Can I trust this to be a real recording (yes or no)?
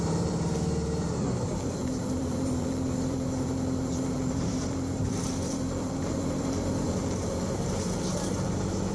no